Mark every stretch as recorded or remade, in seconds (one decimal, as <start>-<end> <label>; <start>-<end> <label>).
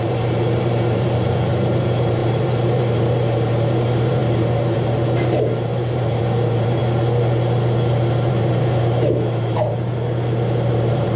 0.0-6.8 remade; 6.8-8.3 recorded; 8.3-9.9 remade; 9.9-10.7 recorded; 10.7-11.2 remade